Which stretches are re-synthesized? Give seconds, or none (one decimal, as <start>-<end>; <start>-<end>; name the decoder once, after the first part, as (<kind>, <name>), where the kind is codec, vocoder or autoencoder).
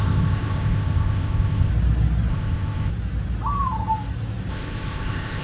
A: 0.0-1.7 (codec, ZipCodec); 2.3-2.9; 4.5-5.4